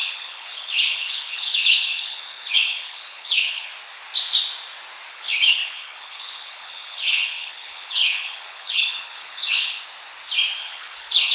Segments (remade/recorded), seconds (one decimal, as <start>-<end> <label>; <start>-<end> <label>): 0.0-3.7 remade; 3.7-5.1 recorded; 5.1-9.8 remade; 9.8-10.6 recorded; 10.6-11.3 remade